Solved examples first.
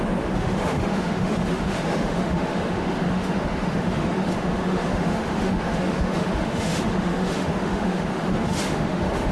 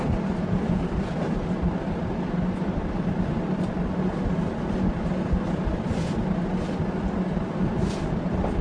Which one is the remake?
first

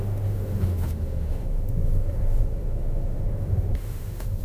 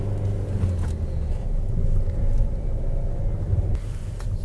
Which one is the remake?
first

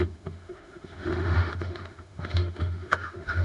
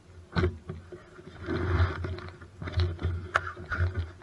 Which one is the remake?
first